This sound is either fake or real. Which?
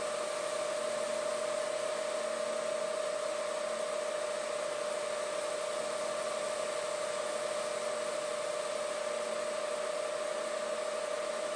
real